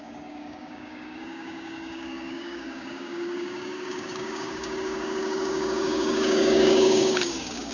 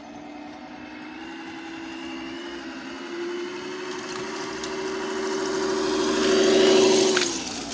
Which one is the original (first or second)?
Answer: second